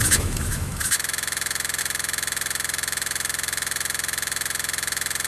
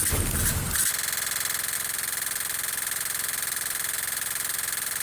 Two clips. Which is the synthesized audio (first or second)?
first